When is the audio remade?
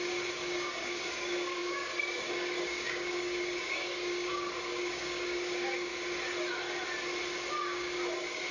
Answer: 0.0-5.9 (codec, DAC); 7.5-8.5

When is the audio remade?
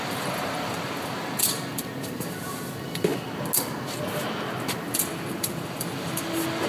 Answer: 0.0-3.1 (vocoder, BigVGAN v2); 4.8-6.7